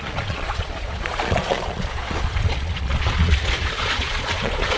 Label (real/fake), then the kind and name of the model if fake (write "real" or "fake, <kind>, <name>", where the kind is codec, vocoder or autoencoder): fake, vocoder, Vocos